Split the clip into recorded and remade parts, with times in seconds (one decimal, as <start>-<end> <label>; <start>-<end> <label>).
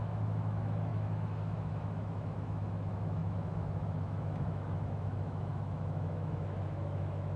0.0-7.4 remade